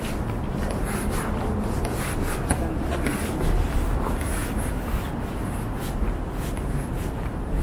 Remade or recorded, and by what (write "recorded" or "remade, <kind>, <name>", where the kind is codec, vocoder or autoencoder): recorded